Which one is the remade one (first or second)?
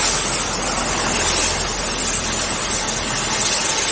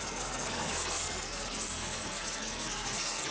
second